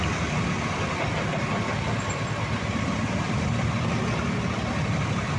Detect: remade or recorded recorded